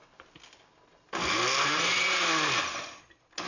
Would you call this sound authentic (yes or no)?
yes